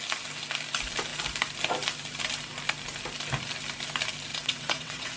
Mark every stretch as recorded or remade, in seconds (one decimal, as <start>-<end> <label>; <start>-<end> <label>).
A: 0.0-4.3 recorded; 4.3-5.2 remade